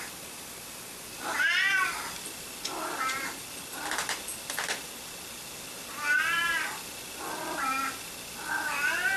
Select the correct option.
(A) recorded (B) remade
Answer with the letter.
A